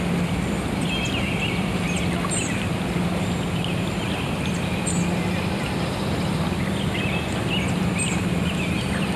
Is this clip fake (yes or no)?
no